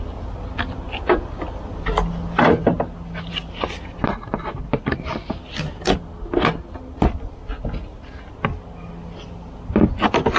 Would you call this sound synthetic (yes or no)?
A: no